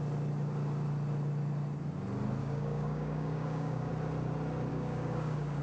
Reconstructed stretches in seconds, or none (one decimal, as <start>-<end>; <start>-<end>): 2.4-3.9; 4.7-5.6